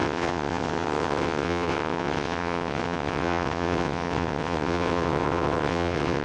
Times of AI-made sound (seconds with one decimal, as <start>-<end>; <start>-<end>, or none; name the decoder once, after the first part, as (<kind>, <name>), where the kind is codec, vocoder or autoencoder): 0.0-6.2 (vocoder, WaveNeXt)